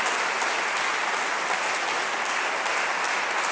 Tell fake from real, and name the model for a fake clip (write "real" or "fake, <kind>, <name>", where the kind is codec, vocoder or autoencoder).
real